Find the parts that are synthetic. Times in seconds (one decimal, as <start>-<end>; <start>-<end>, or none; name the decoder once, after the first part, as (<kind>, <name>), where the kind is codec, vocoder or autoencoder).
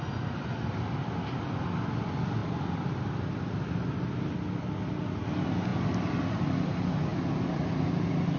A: none